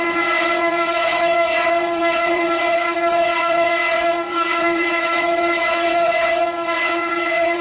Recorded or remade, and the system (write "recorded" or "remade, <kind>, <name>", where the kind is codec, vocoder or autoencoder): remade, vocoder, WaveNeXt